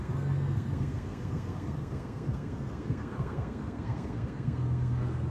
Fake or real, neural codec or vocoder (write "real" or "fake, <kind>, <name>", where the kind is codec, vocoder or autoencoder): fake, codec, SNAC